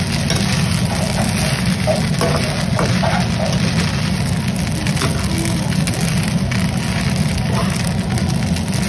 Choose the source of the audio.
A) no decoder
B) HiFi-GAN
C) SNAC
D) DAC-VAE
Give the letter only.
A